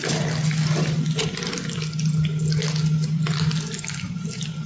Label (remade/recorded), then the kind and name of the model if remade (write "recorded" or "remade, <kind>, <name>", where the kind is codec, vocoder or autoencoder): recorded